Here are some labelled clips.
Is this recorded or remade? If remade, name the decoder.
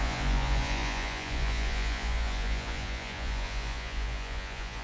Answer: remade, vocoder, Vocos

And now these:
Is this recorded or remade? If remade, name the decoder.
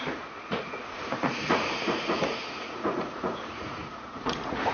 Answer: remade, vocoder, Vocos